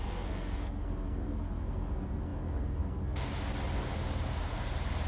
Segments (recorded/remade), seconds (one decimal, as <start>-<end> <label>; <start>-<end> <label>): 0.0-3.3 remade; 3.3-5.1 recorded